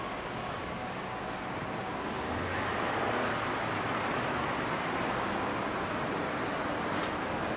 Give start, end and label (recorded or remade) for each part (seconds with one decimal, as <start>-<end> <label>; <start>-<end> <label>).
0.0-2.7 remade; 2.7-5.1 recorded; 5.1-5.5 remade; 5.5-7.6 recorded